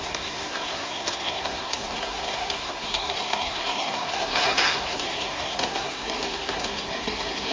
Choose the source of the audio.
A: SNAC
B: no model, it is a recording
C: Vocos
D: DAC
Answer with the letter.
A